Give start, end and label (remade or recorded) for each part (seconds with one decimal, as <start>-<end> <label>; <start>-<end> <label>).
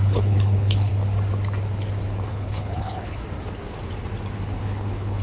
0.0-0.9 remade; 0.9-2.3 recorded; 2.3-3.2 remade; 3.2-4.6 recorded; 4.6-5.2 remade